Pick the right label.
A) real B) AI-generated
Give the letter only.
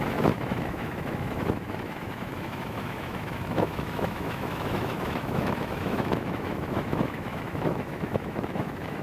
B